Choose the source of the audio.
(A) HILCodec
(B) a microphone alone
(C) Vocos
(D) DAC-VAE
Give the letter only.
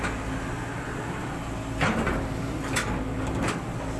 B